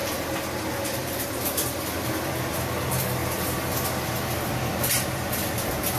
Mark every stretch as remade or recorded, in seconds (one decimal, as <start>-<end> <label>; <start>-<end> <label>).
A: 0.0-2.3 remade; 2.3-6.0 recorded